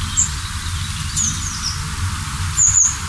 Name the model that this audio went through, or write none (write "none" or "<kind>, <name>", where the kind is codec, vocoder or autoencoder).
none